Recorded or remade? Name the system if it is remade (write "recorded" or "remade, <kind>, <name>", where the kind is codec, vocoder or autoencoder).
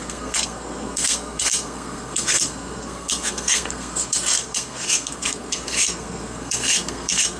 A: remade, codec, SNAC